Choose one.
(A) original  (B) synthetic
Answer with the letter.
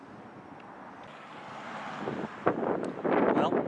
A